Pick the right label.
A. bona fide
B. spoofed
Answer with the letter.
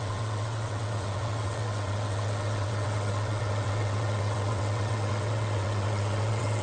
B